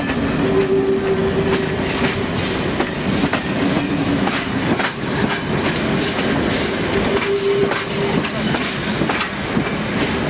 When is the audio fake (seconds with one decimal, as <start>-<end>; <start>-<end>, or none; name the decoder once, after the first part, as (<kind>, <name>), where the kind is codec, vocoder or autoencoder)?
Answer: none

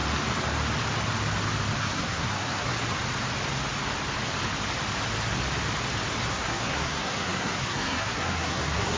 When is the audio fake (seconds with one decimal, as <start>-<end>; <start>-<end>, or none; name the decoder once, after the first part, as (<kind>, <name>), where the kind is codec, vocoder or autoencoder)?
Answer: 1.8-2.7 (codec, SNAC); 6.3-9.0

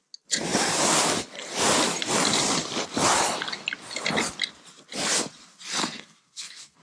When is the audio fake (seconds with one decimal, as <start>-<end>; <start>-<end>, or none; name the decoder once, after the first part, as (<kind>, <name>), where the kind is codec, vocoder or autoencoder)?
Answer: 5.8-6.8 (codec, SNAC)

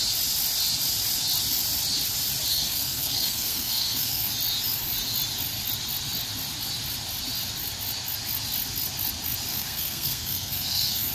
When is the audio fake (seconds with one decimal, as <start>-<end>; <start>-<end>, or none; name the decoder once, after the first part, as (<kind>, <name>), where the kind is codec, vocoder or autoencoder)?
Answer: 2.5-4.3 (codec, SNAC); 9.5-11.1

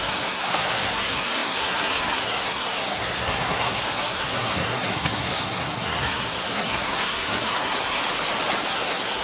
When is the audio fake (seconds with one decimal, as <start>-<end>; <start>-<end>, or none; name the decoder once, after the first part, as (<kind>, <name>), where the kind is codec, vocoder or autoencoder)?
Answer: 0.0-8.0 (codec, SNAC); 8.7-9.2

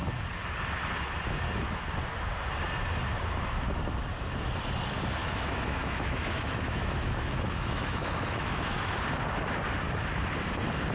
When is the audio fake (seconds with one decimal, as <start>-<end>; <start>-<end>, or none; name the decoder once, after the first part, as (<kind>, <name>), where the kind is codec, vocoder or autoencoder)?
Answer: 5.2-9.0 (autoencoder, DAC-VAE)

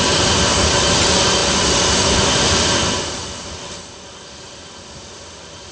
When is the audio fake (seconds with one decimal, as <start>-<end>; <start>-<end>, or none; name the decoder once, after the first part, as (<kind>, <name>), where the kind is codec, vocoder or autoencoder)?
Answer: none

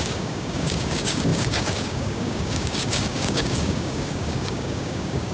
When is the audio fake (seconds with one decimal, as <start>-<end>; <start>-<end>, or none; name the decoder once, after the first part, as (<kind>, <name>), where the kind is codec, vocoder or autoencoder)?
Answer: 0.0-5.3 (codec, DAC)